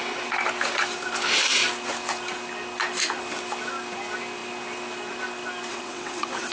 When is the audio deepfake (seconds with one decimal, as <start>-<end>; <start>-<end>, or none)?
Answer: 5.7-6.5